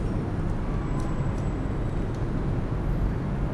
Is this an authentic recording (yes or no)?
yes